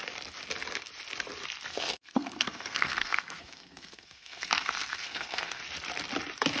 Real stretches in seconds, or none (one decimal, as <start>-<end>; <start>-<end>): 0.0-1.7; 5.6-6.6